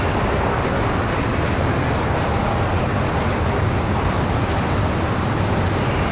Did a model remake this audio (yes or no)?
no